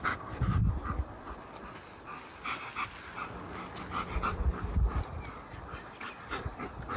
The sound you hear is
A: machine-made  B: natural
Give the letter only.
B